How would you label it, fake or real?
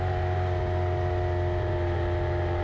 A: real